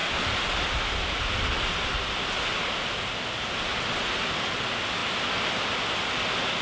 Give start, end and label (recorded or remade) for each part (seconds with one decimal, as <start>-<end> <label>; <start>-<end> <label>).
0.0-6.6 recorded